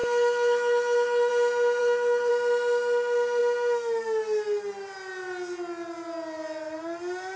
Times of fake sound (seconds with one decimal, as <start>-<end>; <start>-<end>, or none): 0.0-1.3; 1.8-2.3